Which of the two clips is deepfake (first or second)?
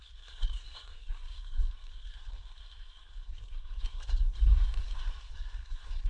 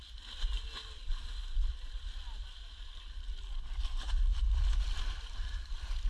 first